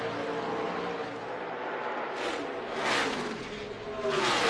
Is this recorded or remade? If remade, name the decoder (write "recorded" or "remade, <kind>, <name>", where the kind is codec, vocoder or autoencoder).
recorded